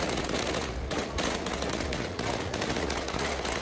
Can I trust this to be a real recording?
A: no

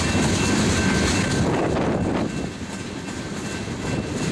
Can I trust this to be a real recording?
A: yes